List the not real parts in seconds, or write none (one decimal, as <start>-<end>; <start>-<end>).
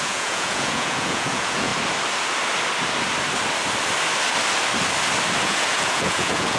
0.0-1.7; 5.4-6.6